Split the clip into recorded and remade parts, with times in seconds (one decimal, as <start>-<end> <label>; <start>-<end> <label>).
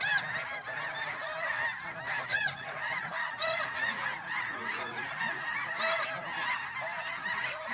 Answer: 0.0-2.3 recorded; 2.3-5.7 remade; 5.7-7.7 recorded